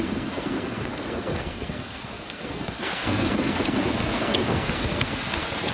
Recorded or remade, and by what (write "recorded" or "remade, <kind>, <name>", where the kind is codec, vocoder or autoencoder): remade, codec, SNAC